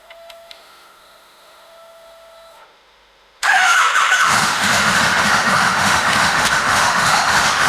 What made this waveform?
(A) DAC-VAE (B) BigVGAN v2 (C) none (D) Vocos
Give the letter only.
A